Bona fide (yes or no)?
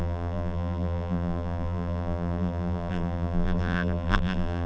no